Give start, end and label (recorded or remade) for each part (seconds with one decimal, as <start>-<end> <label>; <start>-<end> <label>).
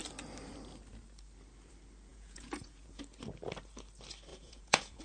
0.0-2.1 recorded; 2.1-3.0 remade; 3.0-4.3 recorded; 4.3-5.0 remade